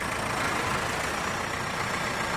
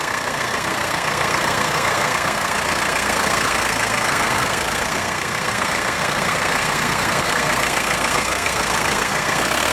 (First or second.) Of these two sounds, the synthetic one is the second